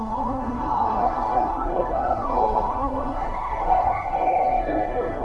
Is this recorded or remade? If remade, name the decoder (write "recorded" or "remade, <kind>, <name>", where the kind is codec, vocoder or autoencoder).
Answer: remade, codec, SNAC